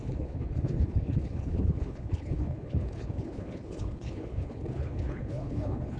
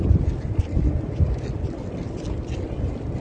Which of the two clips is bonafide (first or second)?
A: second